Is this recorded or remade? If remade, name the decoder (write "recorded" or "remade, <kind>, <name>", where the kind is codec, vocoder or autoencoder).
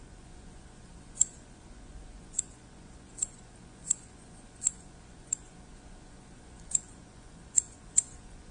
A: remade, vocoder, Vocos